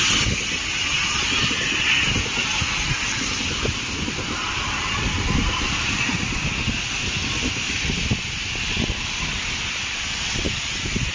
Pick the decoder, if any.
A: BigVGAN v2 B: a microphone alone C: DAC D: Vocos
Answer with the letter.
B